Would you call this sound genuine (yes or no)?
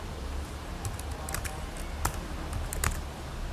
yes